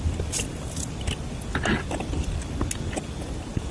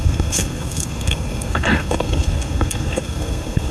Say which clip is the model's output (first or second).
second